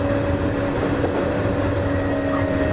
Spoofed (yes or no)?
no